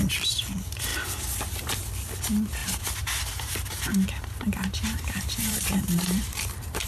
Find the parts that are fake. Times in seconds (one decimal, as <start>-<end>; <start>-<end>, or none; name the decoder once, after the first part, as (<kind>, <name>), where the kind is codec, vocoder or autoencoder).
2.6-6.9 (vocoder, BigVGAN v2)